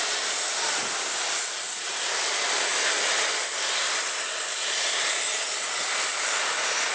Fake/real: real